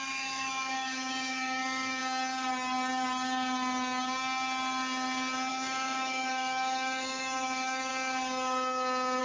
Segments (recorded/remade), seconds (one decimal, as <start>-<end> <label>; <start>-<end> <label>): 0.0-2.0 remade; 2.0-5.5 recorded; 5.5-7.9 remade; 7.9-9.2 recorded